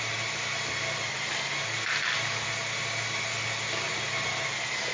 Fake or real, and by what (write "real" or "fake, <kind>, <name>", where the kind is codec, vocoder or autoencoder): real